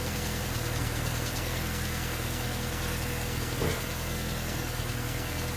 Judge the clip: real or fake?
fake